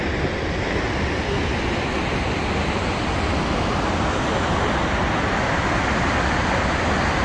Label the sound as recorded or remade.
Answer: recorded